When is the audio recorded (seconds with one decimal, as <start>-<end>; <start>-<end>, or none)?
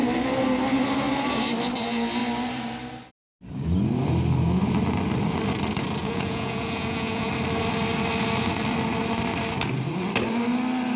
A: 0.0-6.0; 7.3-11.0